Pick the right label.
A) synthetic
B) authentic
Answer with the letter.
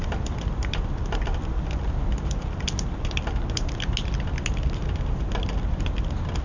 B